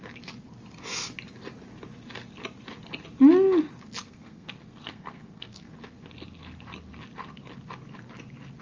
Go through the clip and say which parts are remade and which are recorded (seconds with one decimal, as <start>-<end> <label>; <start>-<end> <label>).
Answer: 0.0-4.0 recorded; 4.0-5.7 remade; 5.7-8.6 recorded